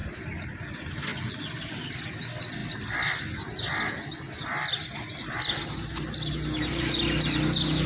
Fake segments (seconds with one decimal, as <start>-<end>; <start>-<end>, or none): none